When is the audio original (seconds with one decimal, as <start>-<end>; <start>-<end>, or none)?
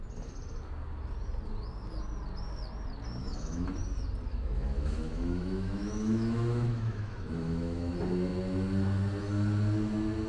0.0-3.2; 3.7-4.3; 7.9-10.3